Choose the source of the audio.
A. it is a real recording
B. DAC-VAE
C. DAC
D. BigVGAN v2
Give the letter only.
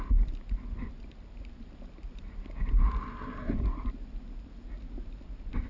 A